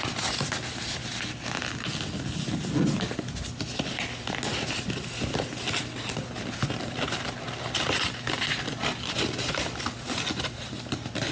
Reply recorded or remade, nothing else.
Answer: recorded